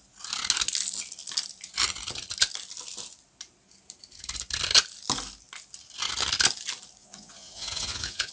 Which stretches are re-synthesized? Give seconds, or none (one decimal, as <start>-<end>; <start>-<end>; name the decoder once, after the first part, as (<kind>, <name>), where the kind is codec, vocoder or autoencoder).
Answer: 7.0-8.3 (vocoder, Vocos)